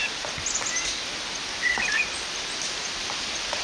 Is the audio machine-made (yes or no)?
yes